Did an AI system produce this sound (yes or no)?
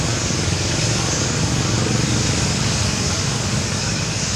yes